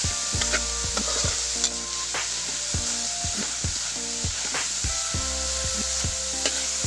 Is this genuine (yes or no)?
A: yes